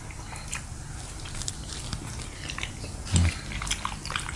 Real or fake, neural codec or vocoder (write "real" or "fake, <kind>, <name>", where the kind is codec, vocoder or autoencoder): real